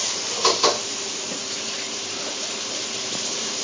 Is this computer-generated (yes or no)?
yes